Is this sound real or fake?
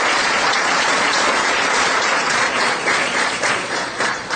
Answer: fake